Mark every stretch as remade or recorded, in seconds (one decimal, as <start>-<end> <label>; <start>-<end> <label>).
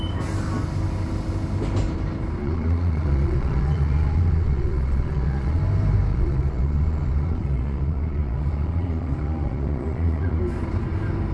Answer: 0.0-2.4 recorded; 2.4-5.6 remade; 5.6-6.1 recorded; 6.1-10.4 remade; 10.4-11.3 recorded